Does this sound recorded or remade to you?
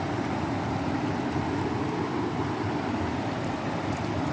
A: remade